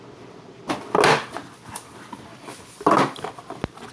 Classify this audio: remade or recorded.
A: recorded